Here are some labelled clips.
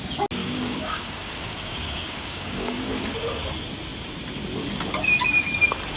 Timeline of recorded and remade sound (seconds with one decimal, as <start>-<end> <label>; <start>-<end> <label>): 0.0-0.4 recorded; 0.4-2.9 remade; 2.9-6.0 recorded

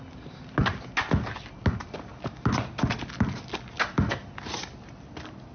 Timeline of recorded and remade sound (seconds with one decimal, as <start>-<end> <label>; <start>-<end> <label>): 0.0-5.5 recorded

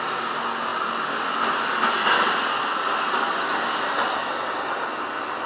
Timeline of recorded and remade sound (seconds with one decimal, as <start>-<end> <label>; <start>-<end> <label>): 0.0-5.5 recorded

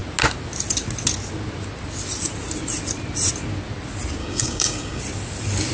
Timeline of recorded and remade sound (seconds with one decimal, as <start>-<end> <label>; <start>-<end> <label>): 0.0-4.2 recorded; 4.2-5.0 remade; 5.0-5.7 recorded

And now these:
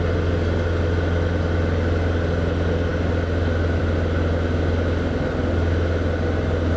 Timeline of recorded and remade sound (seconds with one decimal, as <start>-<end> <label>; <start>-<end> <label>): 0.0-6.8 recorded

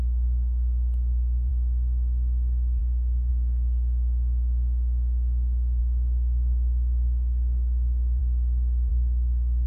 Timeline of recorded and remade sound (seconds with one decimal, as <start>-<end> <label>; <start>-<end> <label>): 0.0-1.5 remade; 1.5-2.8 recorded; 2.8-3.3 remade; 3.3-5.8 recorded; 5.8-8.2 remade; 8.2-8.9 recorded; 8.9-9.7 remade